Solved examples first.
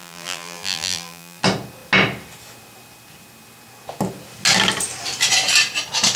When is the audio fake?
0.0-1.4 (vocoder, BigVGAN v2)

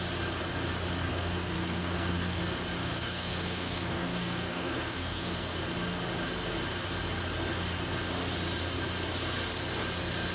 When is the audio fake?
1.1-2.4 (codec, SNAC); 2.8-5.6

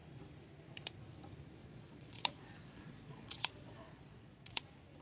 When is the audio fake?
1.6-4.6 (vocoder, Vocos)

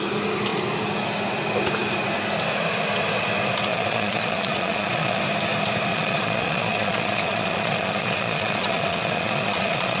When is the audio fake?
3.7-5.2 (vocoder, Vocos); 5.9-10.0